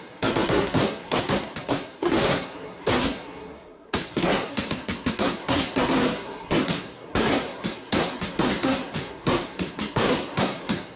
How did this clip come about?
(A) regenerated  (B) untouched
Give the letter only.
A